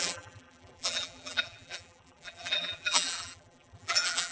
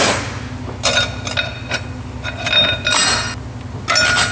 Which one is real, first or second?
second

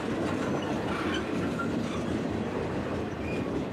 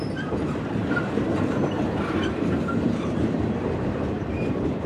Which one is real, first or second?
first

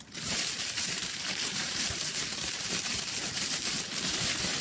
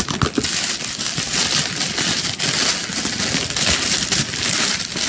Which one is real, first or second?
second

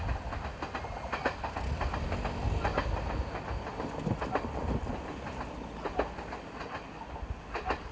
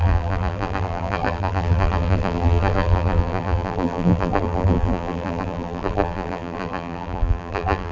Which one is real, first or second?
first